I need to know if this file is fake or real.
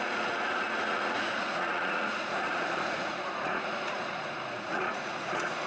fake